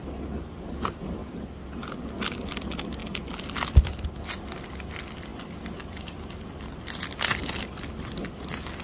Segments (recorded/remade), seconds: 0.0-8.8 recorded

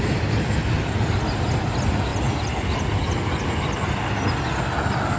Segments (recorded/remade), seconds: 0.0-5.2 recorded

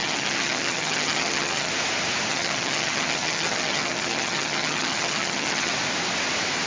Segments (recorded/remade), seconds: 0.0-1.7 remade; 1.7-2.3 recorded; 2.3-5.7 remade; 5.7-6.7 recorded

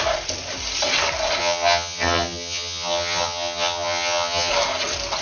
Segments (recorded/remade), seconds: 0.0-1.4 recorded; 1.4-4.5 remade; 4.5-5.2 recorded

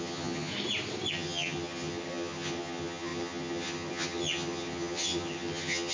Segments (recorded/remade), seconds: 0.0-0.5 remade; 0.5-1.1 recorded; 1.1-5.9 remade